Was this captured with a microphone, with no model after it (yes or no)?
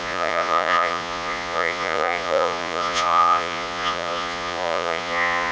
no